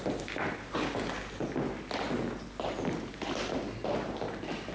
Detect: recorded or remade recorded